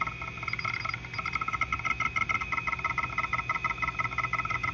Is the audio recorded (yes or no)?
yes